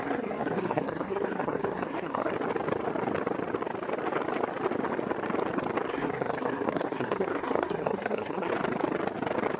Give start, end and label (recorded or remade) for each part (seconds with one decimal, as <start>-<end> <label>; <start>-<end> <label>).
0.0-2.3 remade; 2.3-5.9 recorded; 5.9-8.5 remade; 8.5-9.6 recorded